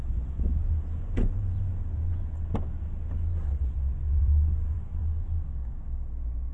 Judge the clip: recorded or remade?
remade